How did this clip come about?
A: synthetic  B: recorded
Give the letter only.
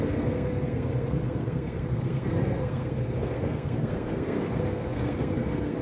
A